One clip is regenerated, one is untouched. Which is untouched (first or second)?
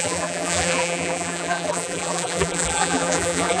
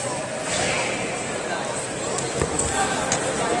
second